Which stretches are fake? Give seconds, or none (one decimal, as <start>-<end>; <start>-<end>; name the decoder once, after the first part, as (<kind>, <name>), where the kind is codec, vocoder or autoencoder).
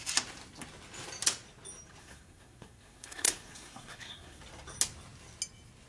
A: 2.0-4.4 (codec, SNAC)